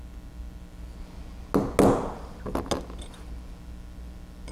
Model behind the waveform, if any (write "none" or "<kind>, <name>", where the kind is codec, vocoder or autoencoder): none